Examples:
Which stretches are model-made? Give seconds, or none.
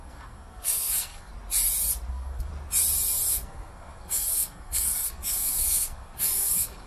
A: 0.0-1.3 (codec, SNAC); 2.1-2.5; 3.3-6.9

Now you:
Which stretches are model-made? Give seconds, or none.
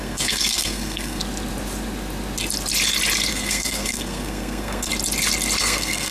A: 0.0-1.2 (codec, SNAC); 3.3-4.9; 5.6-6.1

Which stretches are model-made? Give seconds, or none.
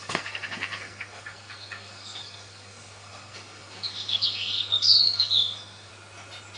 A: 0.0-5.9 (codec, SNAC)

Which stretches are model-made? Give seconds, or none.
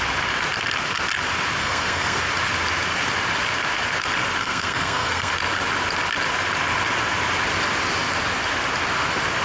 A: 1.6-2.2 (codec, SNAC); 4.4-5.3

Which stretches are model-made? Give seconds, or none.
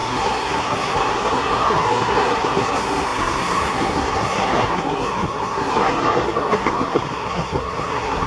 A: 0.0-8.3 (codec, SNAC)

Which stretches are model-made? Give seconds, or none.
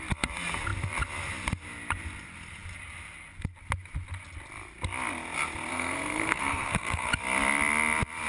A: 5.7-7.1 (codec, SNAC)